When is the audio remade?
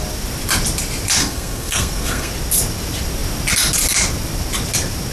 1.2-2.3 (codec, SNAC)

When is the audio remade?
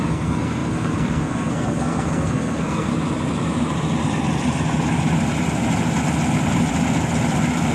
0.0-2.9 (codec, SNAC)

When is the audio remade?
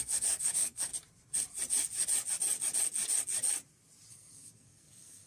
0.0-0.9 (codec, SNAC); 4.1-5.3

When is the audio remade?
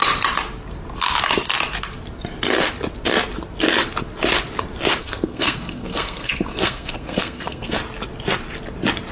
5.0-7.8 (codec, SNAC)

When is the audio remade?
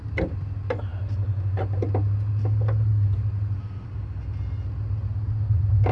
none